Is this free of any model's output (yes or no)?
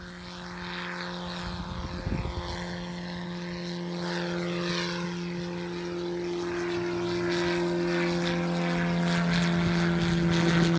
yes